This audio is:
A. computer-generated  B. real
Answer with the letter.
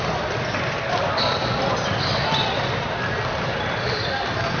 B